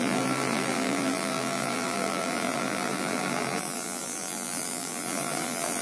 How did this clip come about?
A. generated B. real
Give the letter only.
A